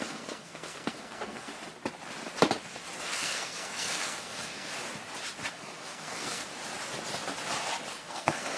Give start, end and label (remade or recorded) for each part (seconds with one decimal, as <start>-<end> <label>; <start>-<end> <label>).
0.0-1.5 remade; 1.5-3.0 recorded; 3.0-4.7 remade; 4.7-5.5 recorded; 5.5-6.5 remade; 6.5-7.9 recorded; 7.9-8.6 remade